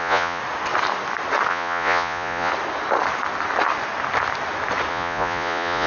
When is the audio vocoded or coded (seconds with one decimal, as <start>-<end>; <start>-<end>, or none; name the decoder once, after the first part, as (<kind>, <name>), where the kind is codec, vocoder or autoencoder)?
0.0-0.4 (vocoder, Vocos); 1.5-2.5; 4.9-5.9